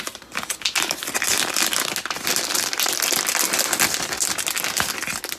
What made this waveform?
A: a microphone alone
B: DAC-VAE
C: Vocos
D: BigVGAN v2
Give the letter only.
A